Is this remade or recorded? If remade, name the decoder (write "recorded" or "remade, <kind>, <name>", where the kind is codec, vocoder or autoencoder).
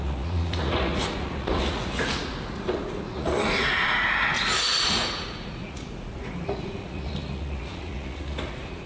remade, vocoder, Vocos